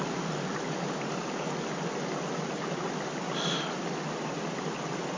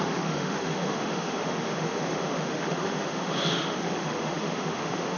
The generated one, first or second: second